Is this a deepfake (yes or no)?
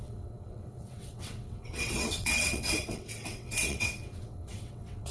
yes